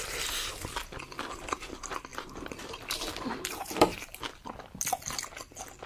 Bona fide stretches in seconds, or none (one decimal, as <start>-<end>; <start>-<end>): 0.0-2.1; 4.5-5.9